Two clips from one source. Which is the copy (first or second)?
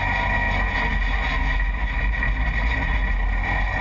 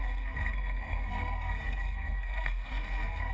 second